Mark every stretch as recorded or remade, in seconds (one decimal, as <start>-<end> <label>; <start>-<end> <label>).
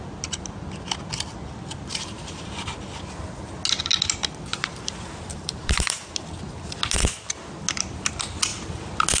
0.0-1.9 recorded; 1.9-2.4 remade; 2.4-4.5 recorded; 4.5-6.1 remade; 6.1-9.2 recorded